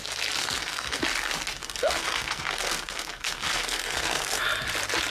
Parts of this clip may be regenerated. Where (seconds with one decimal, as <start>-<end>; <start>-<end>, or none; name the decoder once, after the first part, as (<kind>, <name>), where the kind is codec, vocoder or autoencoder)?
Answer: 0.4-1.0 (codec, SNAC); 1.6-4.4